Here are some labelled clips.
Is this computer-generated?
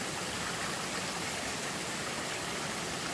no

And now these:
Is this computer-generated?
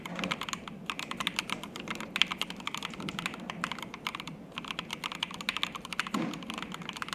no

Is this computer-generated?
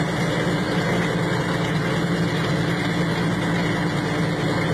no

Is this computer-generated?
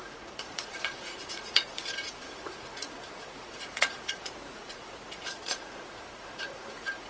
yes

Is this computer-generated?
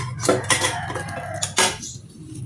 no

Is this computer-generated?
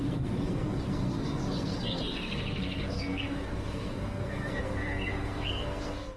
yes